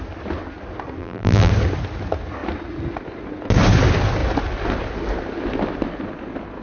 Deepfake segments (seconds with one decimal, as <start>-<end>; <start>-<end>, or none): 1.0-1.5